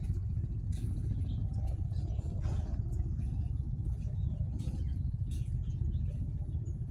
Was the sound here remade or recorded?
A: remade